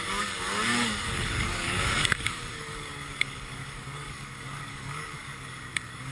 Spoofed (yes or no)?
yes